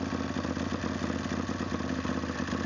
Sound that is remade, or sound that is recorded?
recorded